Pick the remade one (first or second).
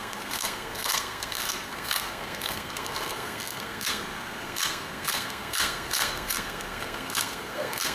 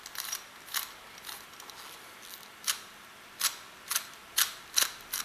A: first